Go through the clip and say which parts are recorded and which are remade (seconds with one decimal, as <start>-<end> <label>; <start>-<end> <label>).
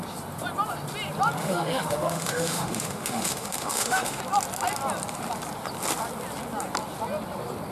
0.0-1.4 recorded; 1.4-4.2 remade; 4.2-7.7 recorded